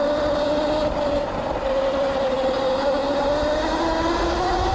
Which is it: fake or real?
real